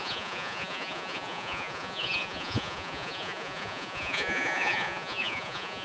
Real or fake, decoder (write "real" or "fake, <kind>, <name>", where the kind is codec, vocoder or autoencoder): fake, vocoder, Vocos